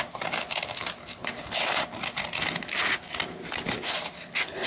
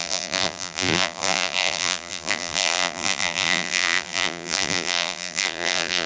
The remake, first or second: second